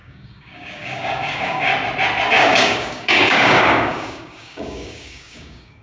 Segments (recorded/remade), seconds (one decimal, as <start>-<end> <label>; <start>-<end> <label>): 0.0-1.7 remade; 1.7-2.3 recorded; 2.3-5.8 remade